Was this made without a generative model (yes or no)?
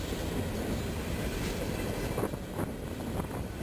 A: yes